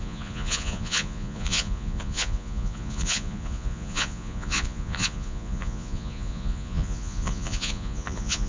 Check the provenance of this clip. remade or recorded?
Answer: remade